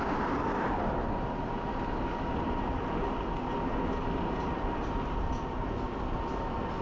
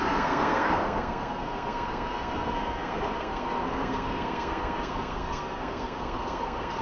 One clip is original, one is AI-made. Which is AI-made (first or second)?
second